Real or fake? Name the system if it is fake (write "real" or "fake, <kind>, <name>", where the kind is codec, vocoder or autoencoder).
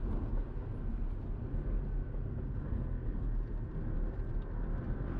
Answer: real